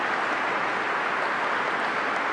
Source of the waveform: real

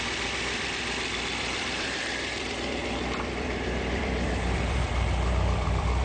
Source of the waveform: fake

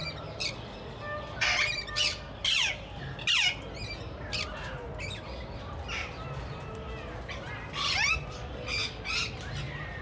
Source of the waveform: real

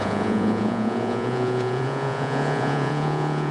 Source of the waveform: fake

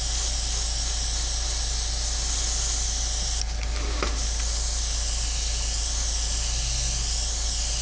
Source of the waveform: real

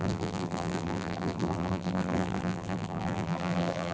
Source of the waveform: fake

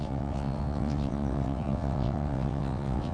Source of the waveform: fake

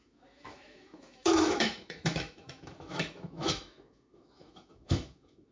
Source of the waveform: fake